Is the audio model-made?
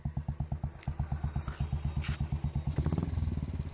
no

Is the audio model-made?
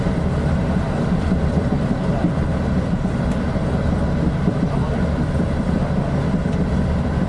yes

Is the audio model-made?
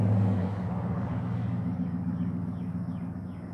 yes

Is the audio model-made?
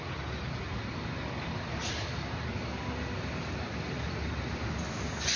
no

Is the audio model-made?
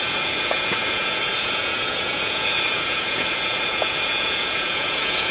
yes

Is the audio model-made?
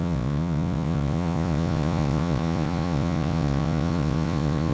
yes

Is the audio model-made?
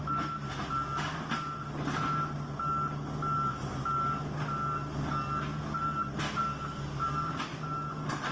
no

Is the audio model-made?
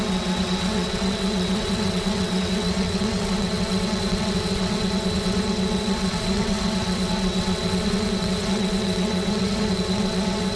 yes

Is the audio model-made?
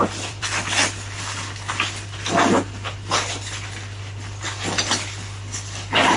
yes